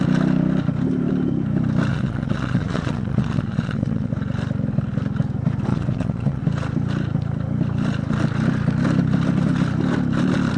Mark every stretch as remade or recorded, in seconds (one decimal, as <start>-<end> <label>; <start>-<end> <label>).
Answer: 0.0-1.9 recorded; 1.9-4.1 remade; 4.1-5.7 recorded; 5.7-6.4 remade; 6.4-10.6 recorded